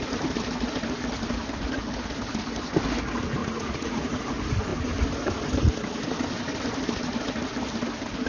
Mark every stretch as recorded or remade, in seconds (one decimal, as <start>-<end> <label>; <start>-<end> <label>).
0.0-3.4 recorded; 3.4-4.2 remade; 4.2-8.3 recorded